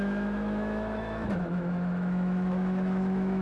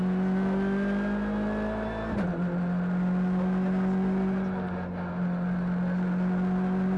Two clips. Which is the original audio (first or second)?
second